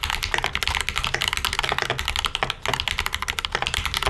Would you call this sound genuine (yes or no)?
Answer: yes